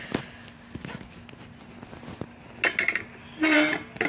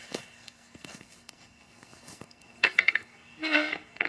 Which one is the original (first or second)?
first